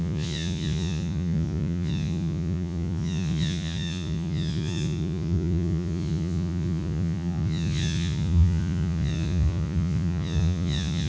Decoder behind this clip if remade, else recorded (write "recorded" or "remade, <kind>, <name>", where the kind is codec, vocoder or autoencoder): remade, vocoder, Vocos